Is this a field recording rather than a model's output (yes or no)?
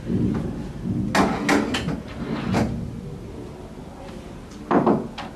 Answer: yes